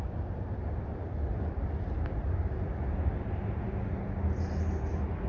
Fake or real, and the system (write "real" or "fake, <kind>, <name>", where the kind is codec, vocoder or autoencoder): real